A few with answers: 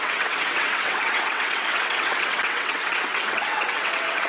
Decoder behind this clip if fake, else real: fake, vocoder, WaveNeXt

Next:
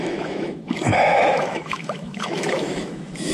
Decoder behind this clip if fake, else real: fake, autoencoder, DAC-VAE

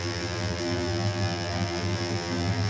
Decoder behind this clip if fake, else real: fake, vocoder, BigVGAN v2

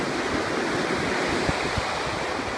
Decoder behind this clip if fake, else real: real